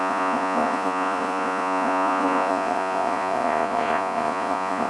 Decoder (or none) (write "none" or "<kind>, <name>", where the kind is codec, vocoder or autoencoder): vocoder, Vocos